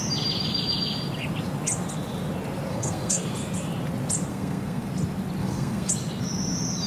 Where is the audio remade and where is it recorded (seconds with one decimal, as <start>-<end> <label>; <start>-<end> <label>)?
0.0-2.7 recorded; 2.7-3.3 remade; 3.3-4.3 recorded; 4.3-4.9 remade; 4.9-5.4 recorded; 5.4-5.9 remade; 5.9-6.9 recorded